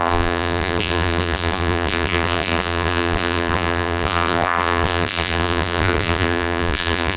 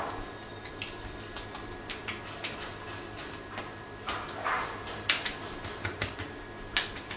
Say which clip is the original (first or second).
second